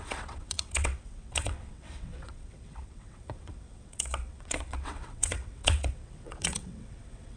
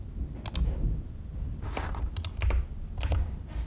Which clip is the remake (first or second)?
first